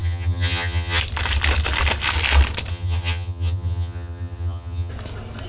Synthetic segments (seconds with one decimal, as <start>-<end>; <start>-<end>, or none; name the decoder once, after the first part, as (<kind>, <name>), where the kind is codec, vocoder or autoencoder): 0.0-1.0 (vocoder, HiFi-GAN); 2.7-4.9